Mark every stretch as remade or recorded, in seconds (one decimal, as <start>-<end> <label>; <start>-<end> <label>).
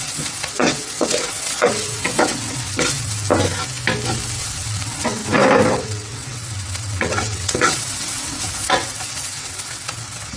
0.0-3.2 remade; 3.2-4.4 recorded; 4.4-5.2 remade; 5.2-5.7 recorded; 5.7-10.4 remade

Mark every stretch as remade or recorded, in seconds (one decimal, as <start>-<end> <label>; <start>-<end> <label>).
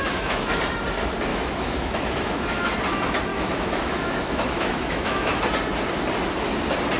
0.0-0.6 remade; 0.6-1.3 recorded; 1.3-2.7 remade; 2.7-3.3 recorded; 3.3-5.4 remade; 5.4-7.0 recorded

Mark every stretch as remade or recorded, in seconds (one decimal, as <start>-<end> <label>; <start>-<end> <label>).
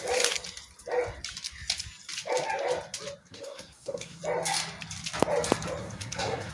0.0-3.2 recorded; 3.2-4.2 remade; 4.2-5.8 recorded; 5.8-6.5 remade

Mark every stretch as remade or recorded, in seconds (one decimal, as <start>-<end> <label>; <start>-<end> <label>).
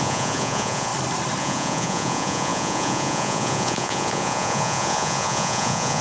0.0-0.9 remade; 0.9-1.4 recorded; 1.4-6.0 remade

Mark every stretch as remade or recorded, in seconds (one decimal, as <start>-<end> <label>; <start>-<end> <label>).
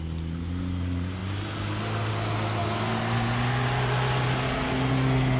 0.0-5.4 recorded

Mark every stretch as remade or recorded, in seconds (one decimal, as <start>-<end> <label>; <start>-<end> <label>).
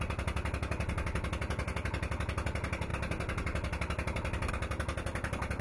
0.0-5.6 recorded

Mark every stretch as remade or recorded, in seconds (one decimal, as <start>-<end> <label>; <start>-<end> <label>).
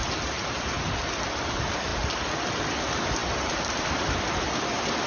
0.0-5.1 remade